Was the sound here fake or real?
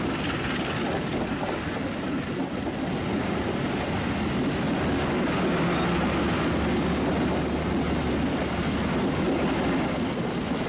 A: real